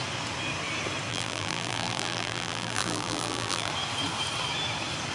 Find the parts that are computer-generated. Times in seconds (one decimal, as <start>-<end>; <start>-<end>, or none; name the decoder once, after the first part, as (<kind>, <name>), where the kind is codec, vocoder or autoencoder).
1.1-3.7 (vocoder, BigVGAN v2)